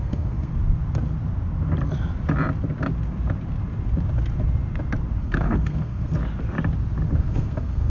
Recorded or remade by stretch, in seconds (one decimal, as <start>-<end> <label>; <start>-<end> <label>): 0.0-0.5 remade; 0.5-5.2 recorded; 5.2-6.2 remade; 6.2-7.2 recorded; 7.2-7.9 remade